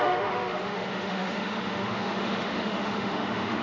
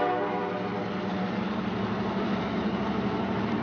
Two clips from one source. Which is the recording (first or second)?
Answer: second